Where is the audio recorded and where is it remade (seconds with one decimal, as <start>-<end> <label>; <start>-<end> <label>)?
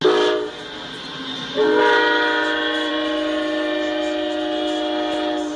0.0-5.6 recorded